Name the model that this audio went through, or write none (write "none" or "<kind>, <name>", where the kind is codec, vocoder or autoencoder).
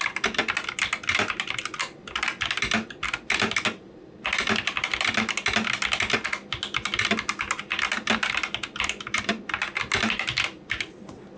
none